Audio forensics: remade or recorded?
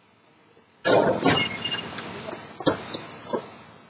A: recorded